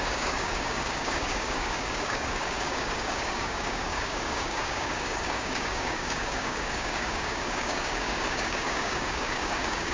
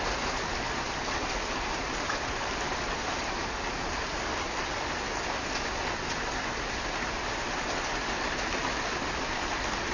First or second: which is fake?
first